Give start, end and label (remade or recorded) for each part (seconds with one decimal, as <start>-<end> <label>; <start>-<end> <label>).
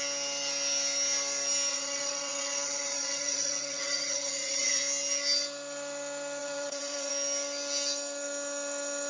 0.0-1.7 recorded; 1.7-4.8 remade; 4.8-6.4 recorded; 6.4-7.1 remade; 7.1-9.1 recorded